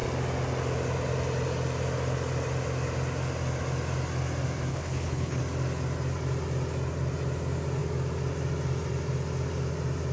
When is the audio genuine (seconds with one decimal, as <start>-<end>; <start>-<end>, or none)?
0.0-4.7; 5.4-10.1